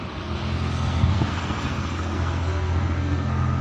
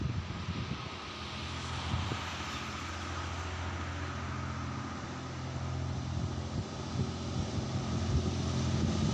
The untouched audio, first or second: second